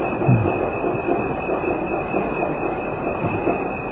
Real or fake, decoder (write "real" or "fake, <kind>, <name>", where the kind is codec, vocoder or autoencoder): real